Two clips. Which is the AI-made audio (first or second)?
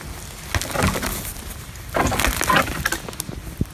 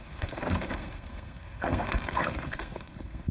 second